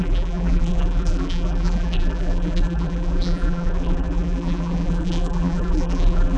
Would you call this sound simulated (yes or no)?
yes